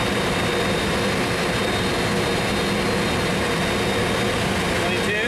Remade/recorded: recorded